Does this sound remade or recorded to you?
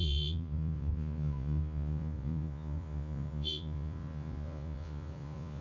remade